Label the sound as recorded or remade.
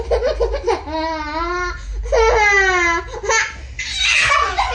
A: recorded